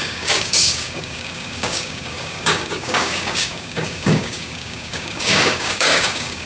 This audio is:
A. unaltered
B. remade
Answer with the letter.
B